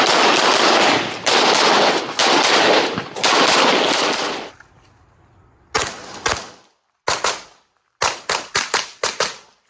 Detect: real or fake real